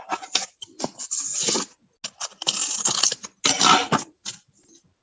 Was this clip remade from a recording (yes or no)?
no